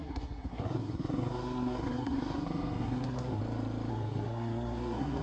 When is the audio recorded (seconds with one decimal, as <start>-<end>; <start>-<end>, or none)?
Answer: 3.4-3.9